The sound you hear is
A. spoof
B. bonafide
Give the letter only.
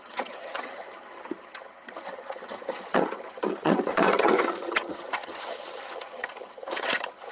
A